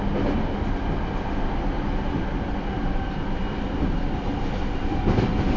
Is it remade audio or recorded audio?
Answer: recorded